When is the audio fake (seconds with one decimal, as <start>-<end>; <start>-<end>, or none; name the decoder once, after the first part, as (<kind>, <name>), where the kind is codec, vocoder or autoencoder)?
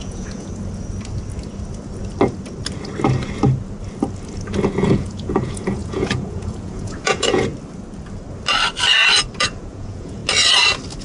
0.0-0.5 (vocoder, Vocos); 4.9-7.5; 9.4-10.2